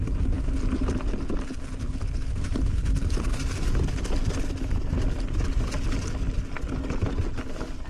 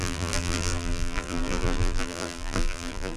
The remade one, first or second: second